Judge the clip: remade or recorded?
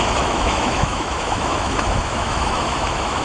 remade